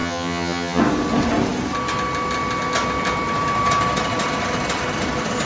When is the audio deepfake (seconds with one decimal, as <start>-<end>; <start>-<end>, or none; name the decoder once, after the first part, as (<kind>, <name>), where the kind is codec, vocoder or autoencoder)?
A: 0.0-0.8 (vocoder, HiFi-GAN)